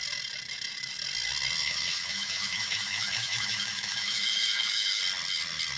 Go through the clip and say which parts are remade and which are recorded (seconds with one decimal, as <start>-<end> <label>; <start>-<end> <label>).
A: 0.0-1.6 recorded; 1.6-5.0 remade; 5.0-5.8 recorded